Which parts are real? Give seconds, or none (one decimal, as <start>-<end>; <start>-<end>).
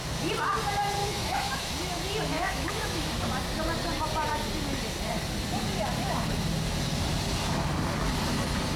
0.0-1.0; 1.7-2.3; 3.1-8.8